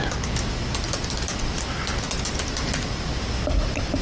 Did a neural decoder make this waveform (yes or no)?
no